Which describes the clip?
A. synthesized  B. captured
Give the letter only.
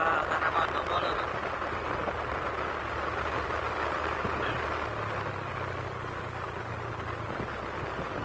B